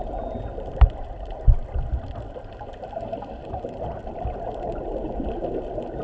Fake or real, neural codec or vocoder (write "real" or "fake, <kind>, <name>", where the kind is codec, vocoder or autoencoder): real